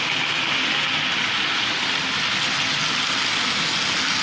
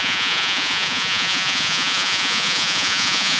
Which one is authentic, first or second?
first